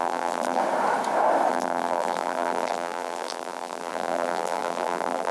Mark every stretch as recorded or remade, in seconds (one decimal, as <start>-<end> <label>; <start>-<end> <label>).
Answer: 0.0-0.6 remade; 0.6-1.5 recorded; 1.5-5.3 remade